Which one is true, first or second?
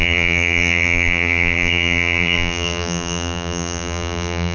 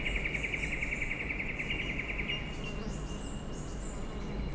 second